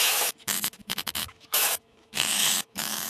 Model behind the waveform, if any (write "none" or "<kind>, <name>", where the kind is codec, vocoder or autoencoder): autoencoder, DAC-VAE